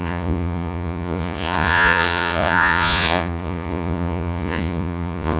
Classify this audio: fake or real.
fake